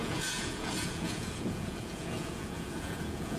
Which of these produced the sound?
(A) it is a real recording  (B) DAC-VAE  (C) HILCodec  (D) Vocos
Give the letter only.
D